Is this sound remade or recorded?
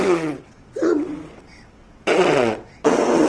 remade